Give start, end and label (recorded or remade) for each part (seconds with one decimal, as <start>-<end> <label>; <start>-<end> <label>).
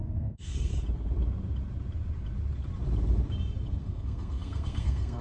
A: 0.0-0.7 remade; 0.7-3.8 recorded; 3.8-5.2 remade